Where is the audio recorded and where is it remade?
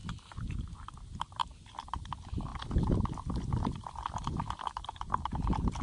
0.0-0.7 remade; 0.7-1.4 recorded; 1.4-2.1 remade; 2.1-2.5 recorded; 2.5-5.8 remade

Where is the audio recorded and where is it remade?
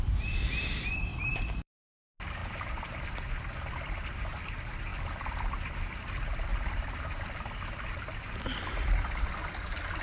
0.0-1.1 recorded; 1.1-1.8 remade; 1.8-2.4 recorded; 2.4-3.0 remade; 3.0-6.5 recorded; 6.5-7.1 remade; 7.1-10.0 recorded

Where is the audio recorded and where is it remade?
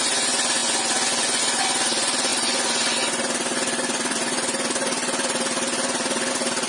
0.0-6.7 remade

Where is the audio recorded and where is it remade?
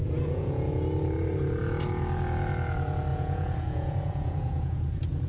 0.0-0.7 remade; 0.7-3.1 recorded; 3.1-5.3 remade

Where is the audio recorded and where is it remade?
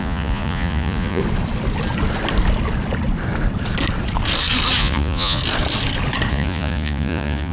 0.0-1.2 remade; 1.2-4.8 recorded; 4.8-5.4 remade; 5.4-6.3 recorded; 6.3-7.5 remade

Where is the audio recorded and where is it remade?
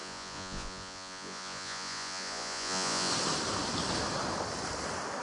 0.0-3.1 remade; 3.1-5.2 recorded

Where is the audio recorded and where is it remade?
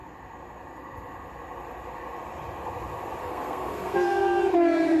0.0-3.2 recorded; 3.2-4.4 remade; 4.4-5.0 recorded